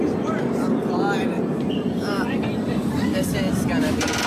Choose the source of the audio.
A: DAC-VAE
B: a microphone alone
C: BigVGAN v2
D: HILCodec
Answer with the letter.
C